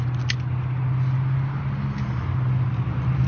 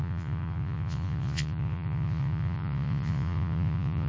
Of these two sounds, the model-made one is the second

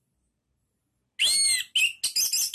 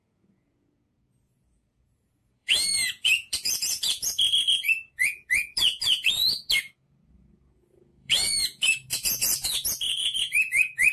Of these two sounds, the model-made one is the second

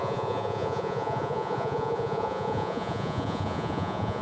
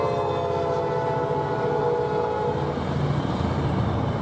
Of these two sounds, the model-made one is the first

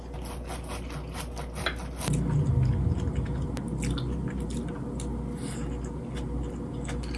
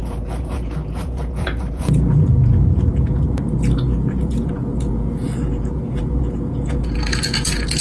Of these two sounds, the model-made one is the second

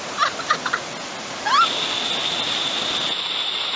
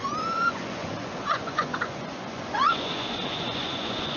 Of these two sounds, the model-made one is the second